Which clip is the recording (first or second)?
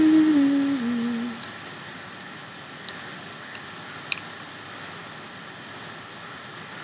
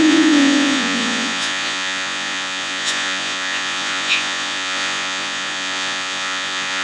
first